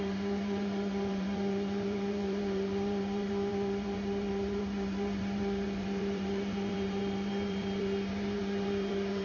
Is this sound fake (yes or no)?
yes